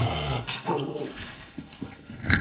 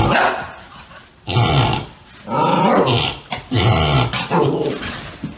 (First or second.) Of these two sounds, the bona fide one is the second